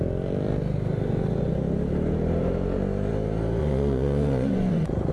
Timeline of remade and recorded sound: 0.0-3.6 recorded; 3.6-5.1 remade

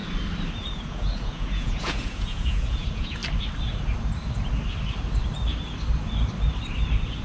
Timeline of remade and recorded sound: 0.0-0.7 recorded; 0.7-3.2 remade; 3.2-7.2 recorded